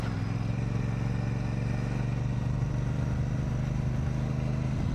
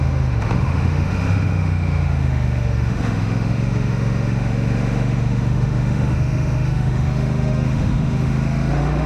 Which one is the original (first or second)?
first